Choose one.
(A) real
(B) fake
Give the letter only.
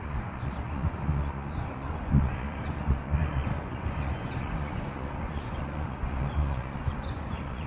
B